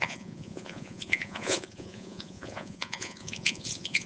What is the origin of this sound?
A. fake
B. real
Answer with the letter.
A